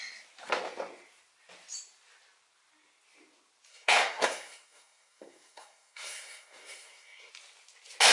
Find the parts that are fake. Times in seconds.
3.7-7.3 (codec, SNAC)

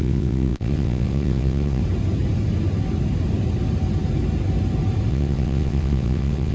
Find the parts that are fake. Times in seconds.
0.0-1.8 (vocoder, WaveNeXt); 5.1-6.5

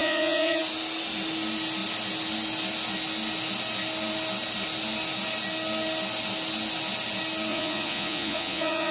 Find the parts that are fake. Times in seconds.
0.0-0.6 (vocoder, Vocos); 7.5-8.9

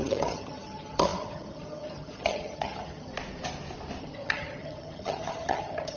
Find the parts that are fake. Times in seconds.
0.0-3.1 (vocoder, HiFi-GAN); 4.0-6.0

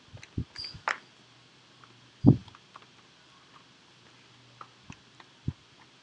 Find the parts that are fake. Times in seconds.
none

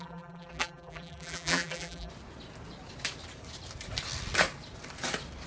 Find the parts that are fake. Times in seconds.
0.0-2.1 (vocoder, BigVGAN v2)

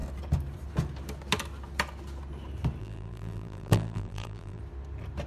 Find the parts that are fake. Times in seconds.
2.8-4.6 (vocoder, BigVGAN v2)

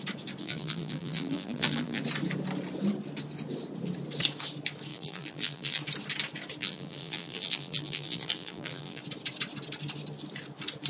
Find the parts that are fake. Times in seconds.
0.4-2.0 (vocoder, BigVGAN v2); 4.9-5.8; 6.6-9.0